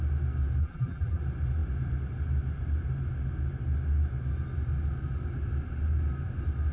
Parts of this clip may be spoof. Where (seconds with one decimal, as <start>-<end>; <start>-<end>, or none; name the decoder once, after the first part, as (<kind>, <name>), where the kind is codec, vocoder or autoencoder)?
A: 0.6-1.2 (vocoder, BigVGAN v2)